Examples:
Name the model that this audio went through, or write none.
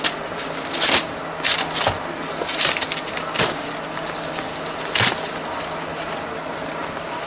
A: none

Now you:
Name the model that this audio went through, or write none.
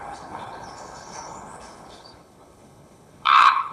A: codec, HILCodec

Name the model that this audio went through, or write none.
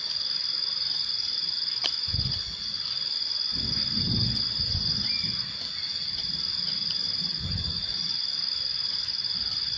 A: none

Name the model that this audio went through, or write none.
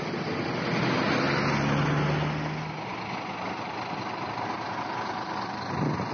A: none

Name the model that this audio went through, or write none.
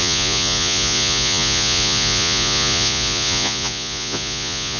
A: vocoder, Vocos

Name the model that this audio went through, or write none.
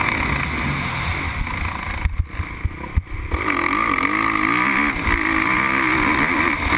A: none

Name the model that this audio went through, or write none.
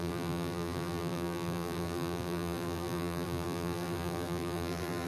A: vocoder, BigVGAN v2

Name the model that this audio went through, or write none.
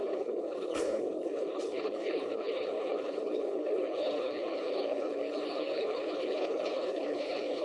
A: codec, HILCodec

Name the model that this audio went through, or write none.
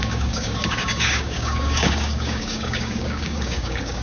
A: codec, DAC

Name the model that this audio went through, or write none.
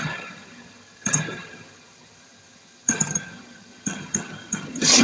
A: vocoder, HiFi-GAN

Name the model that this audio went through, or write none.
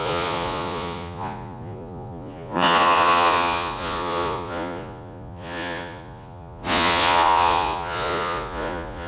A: vocoder, Vocos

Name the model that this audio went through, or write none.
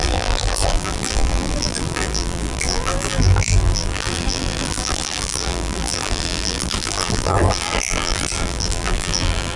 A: vocoder, BigVGAN v2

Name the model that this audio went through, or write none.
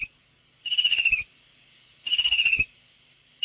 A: none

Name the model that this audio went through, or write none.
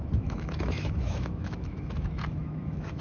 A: autoencoder, DAC-VAE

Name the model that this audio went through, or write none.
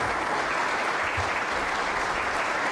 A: none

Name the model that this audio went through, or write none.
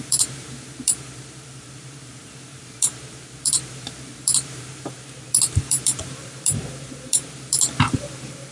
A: vocoder, BigVGAN v2